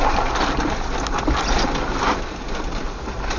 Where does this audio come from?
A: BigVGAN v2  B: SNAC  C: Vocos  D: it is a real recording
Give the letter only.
D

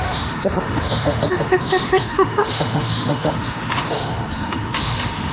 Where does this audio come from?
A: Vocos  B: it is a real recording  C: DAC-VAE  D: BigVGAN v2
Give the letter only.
C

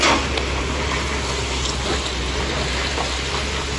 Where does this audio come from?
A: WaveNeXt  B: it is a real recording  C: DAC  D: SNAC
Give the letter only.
B